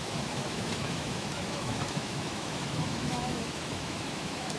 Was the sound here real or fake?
fake